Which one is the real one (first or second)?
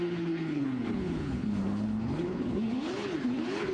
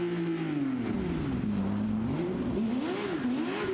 second